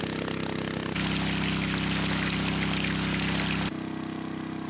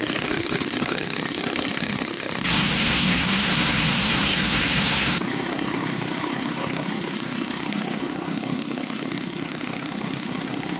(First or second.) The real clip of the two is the first